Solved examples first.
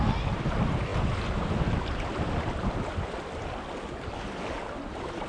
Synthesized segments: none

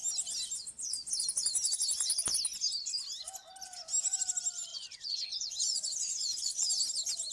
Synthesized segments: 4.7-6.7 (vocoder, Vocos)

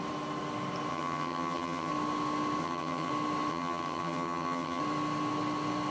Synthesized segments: 0.9-1.9 (vocoder, HiFi-GAN); 2.6-3.1; 3.5-4.8